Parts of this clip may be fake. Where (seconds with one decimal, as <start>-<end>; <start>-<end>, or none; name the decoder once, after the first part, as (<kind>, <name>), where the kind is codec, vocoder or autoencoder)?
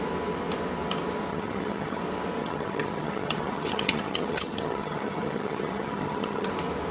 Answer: 1.3-2.0 (vocoder, HiFi-GAN); 2.4-6.5